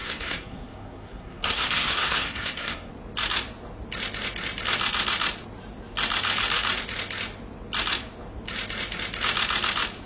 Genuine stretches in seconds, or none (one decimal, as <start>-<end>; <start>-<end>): 2.9-10.1